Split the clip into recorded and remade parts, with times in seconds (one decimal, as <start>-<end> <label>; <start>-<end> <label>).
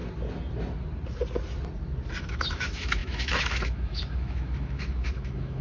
0.0-2.2 recorded; 2.2-5.6 remade